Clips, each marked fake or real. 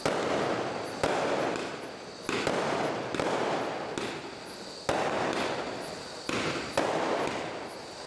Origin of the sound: real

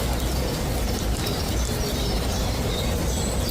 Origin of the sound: real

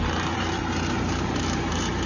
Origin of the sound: fake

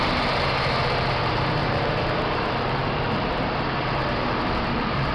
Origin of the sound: fake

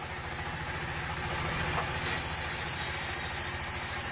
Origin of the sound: real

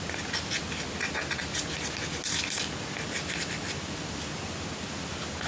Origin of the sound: real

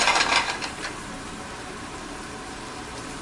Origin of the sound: fake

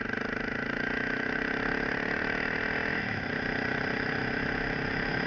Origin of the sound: real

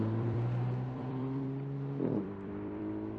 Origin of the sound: fake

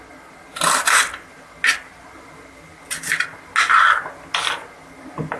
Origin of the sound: real